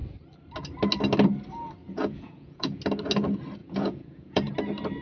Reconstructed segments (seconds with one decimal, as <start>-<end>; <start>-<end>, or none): 1.8-2.8; 3.6-4.5